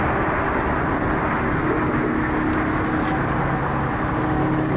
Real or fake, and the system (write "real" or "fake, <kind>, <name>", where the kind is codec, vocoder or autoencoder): real